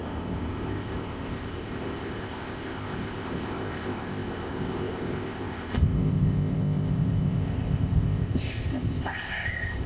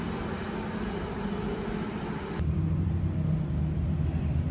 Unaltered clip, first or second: second